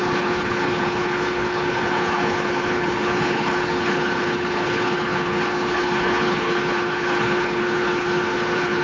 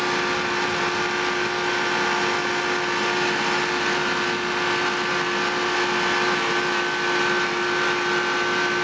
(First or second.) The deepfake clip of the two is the first